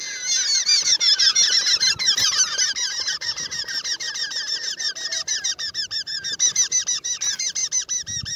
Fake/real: real